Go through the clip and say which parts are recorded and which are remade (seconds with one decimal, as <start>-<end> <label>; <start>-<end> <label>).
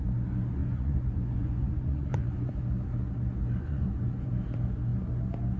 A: 0.0-0.6 recorded; 0.6-2.6 remade; 2.6-3.6 recorded; 3.6-4.3 remade; 4.3-5.6 recorded